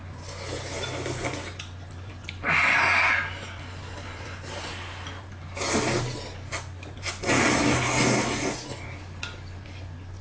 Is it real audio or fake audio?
real